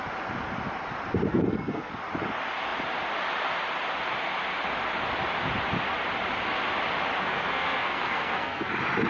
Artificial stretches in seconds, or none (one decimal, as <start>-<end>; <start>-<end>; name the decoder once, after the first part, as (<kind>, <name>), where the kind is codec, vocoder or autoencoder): 1.3-1.9 (codec, SNAC); 7.2-8.7